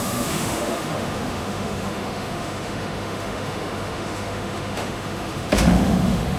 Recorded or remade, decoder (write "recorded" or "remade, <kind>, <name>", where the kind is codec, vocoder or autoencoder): remade, autoencoder, DAC-VAE